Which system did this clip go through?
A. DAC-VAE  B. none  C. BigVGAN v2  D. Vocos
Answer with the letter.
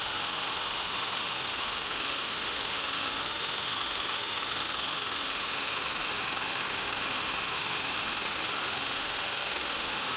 A